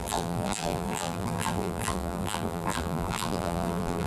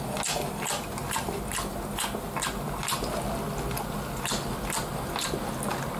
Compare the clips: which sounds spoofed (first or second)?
first